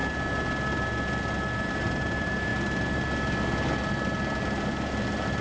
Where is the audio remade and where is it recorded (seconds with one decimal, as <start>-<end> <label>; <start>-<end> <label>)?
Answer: 0.0-1.7 recorded; 1.7-2.5 remade; 2.5-5.4 recorded